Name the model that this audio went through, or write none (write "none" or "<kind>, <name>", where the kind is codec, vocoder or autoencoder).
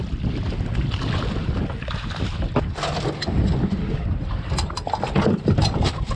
none